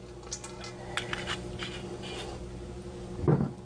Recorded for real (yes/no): yes